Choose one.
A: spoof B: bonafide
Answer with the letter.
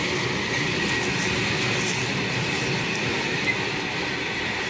B